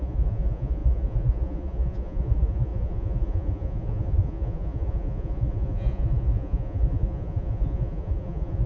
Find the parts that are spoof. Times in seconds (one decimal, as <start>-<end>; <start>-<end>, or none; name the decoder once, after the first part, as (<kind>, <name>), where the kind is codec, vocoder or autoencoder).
0.0-8.7 (vocoder, Vocos)